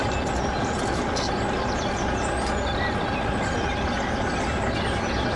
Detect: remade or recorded recorded